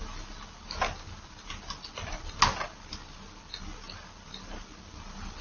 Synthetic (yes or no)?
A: no